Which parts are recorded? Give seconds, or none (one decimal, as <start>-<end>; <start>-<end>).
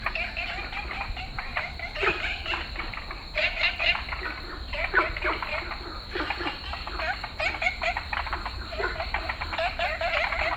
0.0-1.5; 3.1-10.6